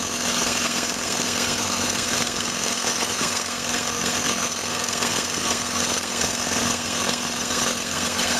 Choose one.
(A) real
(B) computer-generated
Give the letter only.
B